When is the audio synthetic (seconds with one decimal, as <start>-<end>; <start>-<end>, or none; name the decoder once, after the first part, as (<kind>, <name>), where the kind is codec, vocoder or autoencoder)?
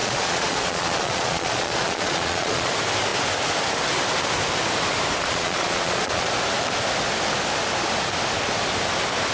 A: 0.0-2.7 (vocoder, Vocos); 5.2-6.3